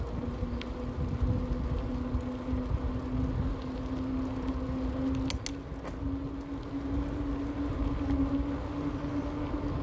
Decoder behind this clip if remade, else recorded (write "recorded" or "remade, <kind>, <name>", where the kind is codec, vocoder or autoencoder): recorded